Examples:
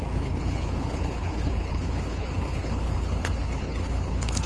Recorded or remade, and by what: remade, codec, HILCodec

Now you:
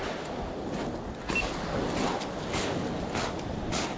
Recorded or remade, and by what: recorded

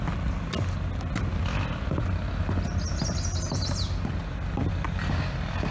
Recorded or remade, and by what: recorded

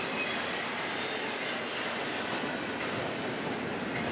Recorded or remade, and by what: recorded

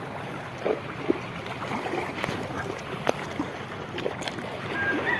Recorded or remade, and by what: recorded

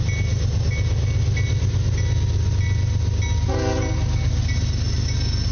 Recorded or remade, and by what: recorded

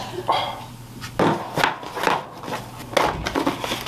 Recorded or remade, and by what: recorded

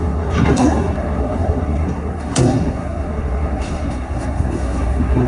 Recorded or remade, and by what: remade, codec, SNAC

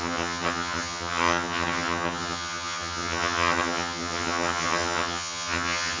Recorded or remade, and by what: remade, vocoder, HiFi-GAN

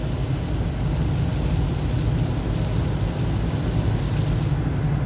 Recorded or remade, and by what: recorded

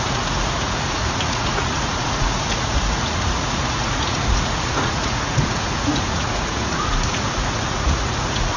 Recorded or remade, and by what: remade, vocoder, Vocos